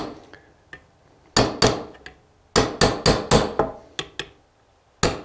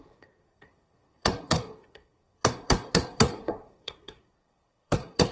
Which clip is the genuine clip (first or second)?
first